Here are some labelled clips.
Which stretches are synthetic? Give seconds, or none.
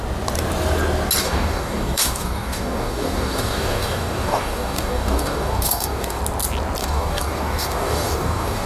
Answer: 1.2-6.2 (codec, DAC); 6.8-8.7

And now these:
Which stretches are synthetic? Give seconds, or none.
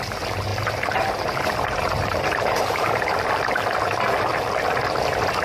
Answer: 0.5-3.3 (vocoder, BigVGAN v2)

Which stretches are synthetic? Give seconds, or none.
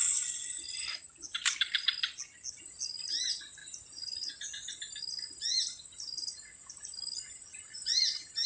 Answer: none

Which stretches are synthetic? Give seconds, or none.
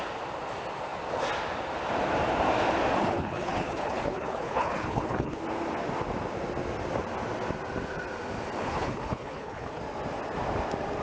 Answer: 3.0-5.4 (codec, HILCodec); 8.6-9.8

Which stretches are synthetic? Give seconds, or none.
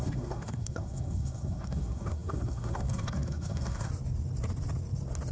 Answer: 0.0-3.9 (codec, SNAC)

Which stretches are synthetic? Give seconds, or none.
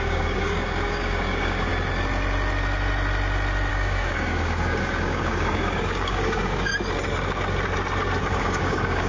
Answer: 0.0-1.7 (codec, DAC); 3.7-6.7; 8.2-9.1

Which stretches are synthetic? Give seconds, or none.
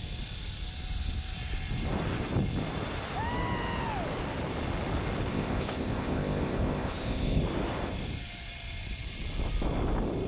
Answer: 5.3-7.4 (codec, ZipCodec)